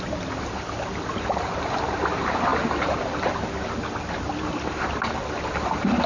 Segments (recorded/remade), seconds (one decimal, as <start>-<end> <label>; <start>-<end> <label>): 0.0-6.1 recorded